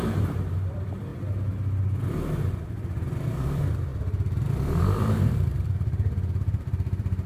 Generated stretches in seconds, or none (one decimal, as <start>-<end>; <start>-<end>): 0.0-1.1; 2.5-3.9; 4.8-7.3